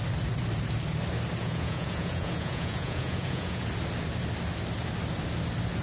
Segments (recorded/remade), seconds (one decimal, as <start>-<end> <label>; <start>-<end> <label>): 0.0-1.4 recorded; 1.4-3.7 remade; 3.7-5.8 recorded